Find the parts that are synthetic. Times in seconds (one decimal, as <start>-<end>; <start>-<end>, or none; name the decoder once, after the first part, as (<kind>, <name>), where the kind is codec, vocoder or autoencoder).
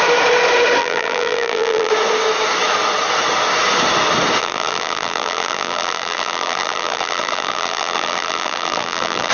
0.8-1.9 (vocoder, BigVGAN v2); 4.4-9.3